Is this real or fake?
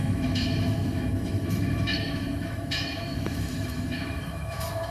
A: fake